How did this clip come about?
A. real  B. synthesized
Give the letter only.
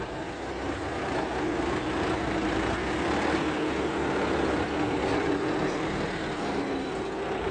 A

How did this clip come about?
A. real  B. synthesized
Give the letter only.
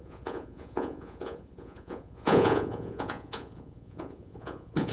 B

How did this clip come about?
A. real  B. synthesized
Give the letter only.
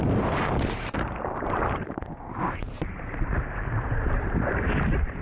B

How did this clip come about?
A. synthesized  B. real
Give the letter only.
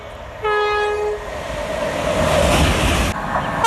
B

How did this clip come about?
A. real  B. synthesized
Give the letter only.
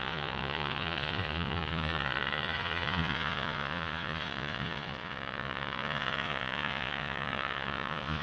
B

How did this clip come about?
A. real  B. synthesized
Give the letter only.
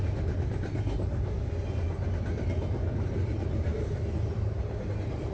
A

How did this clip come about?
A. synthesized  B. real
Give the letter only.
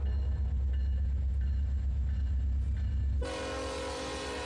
B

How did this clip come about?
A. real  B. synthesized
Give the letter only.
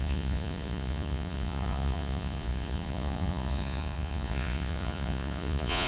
B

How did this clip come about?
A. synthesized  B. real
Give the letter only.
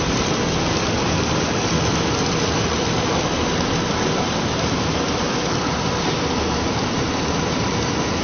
A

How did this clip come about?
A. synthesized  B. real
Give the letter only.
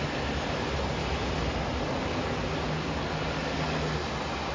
B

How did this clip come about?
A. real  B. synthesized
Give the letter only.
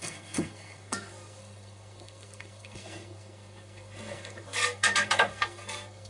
B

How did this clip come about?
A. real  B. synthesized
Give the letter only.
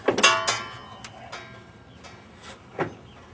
A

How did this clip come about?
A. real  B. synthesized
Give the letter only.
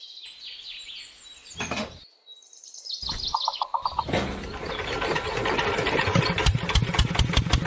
A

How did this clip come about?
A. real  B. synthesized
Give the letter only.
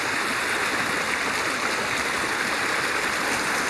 A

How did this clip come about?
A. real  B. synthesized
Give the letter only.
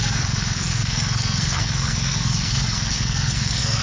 B